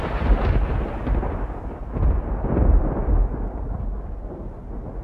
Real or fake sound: real